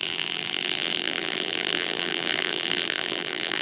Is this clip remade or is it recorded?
remade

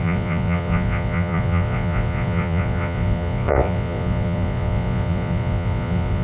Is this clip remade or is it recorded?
remade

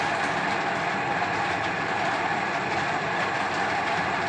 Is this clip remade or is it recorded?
recorded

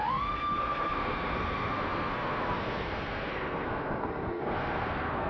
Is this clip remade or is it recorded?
remade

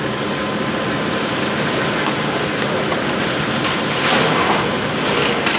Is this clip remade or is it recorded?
recorded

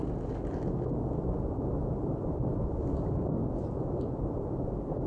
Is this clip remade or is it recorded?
recorded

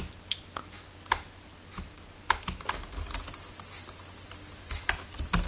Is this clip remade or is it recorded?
recorded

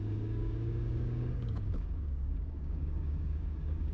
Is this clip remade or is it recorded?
remade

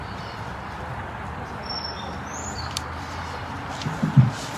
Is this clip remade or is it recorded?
remade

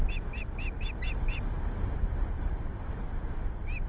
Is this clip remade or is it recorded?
recorded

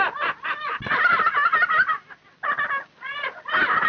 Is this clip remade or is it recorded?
recorded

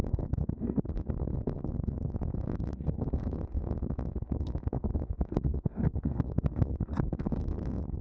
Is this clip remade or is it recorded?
remade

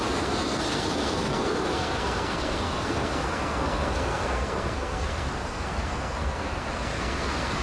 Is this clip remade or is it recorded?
remade